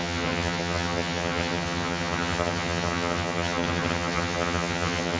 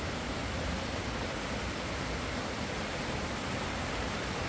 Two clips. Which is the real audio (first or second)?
second